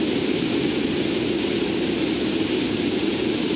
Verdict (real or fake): real